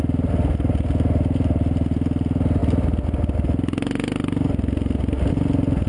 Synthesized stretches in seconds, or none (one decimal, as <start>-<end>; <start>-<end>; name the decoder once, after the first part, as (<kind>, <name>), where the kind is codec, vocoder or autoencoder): none